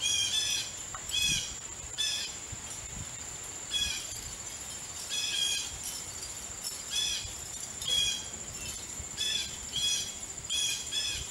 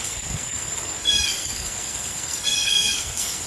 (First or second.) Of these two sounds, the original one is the first